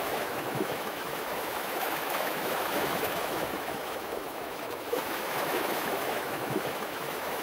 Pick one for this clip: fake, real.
fake